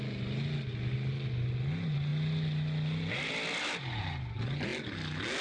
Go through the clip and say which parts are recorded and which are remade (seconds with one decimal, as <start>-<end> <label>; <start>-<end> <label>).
0.0-5.4 recorded